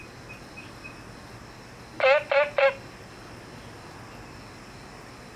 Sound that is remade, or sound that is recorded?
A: recorded